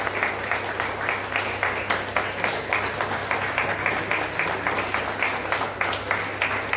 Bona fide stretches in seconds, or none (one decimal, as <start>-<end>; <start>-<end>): 0.0-6.8